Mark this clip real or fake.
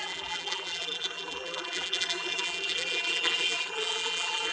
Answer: fake